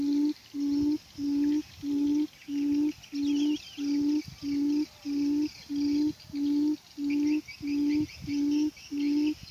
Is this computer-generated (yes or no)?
no